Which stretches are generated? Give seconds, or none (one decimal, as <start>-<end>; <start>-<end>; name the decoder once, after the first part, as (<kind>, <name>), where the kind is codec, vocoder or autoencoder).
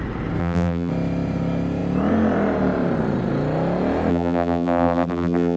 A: 0.4-0.9 (vocoder, BigVGAN v2); 4.1-5.6